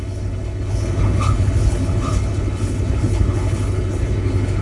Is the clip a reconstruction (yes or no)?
yes